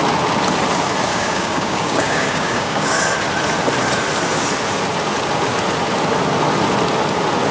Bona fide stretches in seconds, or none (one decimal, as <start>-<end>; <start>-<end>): 0.0-1.1; 3.0-7.5